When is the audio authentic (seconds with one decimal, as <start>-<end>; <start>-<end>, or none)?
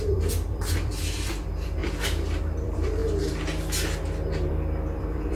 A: 1.8-2.4; 3.0-4.5